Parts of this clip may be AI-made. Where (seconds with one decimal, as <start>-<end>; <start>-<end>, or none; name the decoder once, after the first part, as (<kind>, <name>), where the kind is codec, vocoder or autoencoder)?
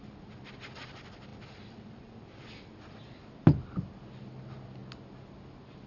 none